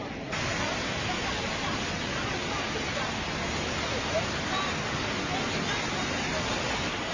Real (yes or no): yes